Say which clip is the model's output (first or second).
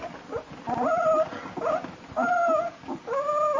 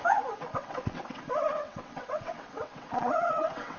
second